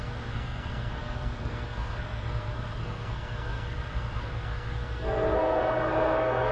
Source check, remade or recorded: remade